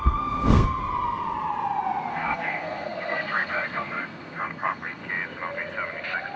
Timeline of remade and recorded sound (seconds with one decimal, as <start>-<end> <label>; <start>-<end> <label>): 0.0-0.8 remade; 0.8-2.1 recorded; 2.1-5.0 remade; 5.0-6.4 recorded